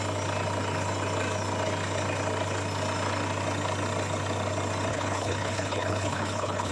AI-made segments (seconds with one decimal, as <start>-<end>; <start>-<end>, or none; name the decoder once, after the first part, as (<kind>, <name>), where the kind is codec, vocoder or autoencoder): 4.9-6.7 (codec, HILCodec)